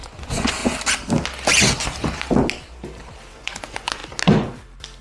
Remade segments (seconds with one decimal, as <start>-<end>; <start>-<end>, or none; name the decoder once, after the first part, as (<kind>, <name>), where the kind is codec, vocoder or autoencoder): 0.0-0.6 (vocoder, Vocos); 3.3-4.0